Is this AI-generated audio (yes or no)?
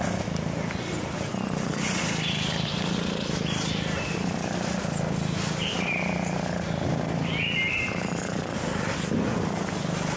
no